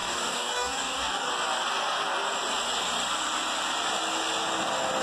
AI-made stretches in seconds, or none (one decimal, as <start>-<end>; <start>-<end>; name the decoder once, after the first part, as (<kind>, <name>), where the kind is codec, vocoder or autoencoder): 0.0-1.3 (codec, DAC)